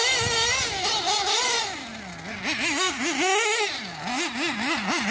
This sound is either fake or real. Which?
real